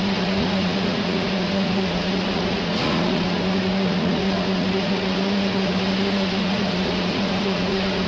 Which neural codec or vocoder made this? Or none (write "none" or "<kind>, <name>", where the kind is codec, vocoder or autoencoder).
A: vocoder, Vocos